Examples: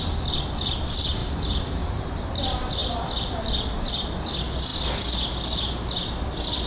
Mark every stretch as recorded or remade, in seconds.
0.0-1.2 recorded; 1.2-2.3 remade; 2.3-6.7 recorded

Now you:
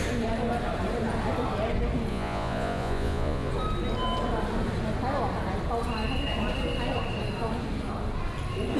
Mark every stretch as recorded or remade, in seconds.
0.0-2.1 recorded; 2.1-3.5 remade; 3.5-8.8 recorded

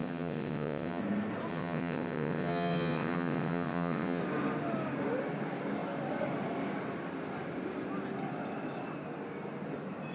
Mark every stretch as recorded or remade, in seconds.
0.0-1.0 remade; 1.0-1.5 recorded; 1.5-4.2 remade; 4.2-10.1 recorded